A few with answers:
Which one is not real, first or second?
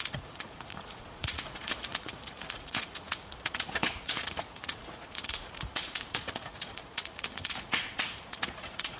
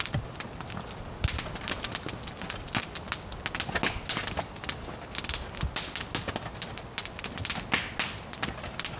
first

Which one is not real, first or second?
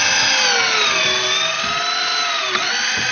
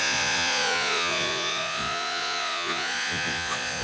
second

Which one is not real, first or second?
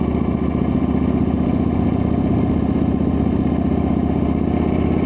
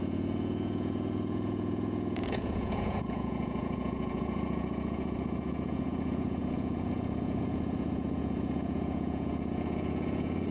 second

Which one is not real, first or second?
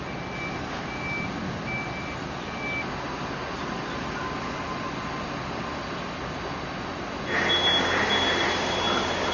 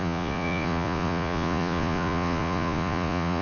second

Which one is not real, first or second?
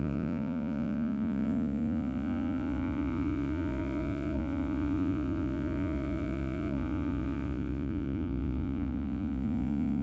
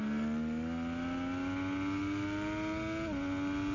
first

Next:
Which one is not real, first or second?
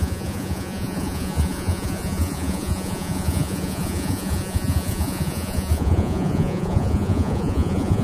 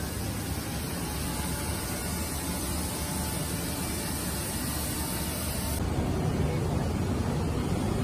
first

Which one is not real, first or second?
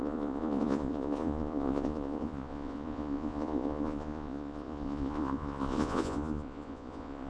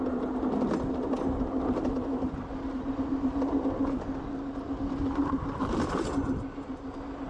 first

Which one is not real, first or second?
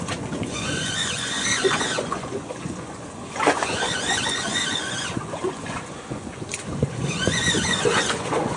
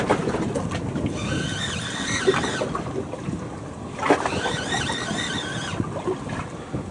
first